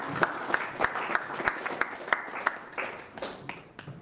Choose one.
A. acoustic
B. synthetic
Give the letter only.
A